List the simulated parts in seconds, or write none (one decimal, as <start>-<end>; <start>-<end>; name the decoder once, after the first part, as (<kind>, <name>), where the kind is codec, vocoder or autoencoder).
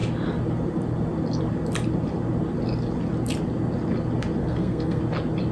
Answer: 4.4-5.0 (codec, SNAC)